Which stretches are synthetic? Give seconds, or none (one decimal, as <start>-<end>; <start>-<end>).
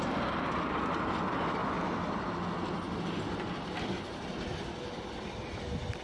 none